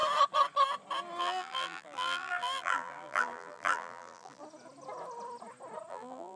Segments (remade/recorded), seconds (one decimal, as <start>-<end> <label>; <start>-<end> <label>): 0.0-1.2 recorded; 1.2-4.4 remade; 4.4-5.9 recorded; 5.9-6.4 remade